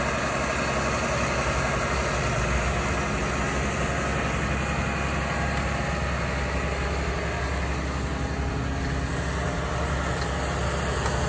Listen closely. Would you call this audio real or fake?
real